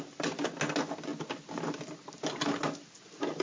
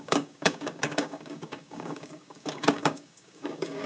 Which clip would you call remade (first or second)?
second